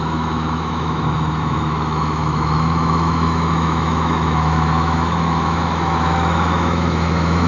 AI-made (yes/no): yes